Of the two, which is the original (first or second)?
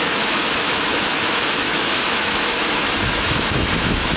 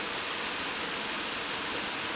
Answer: second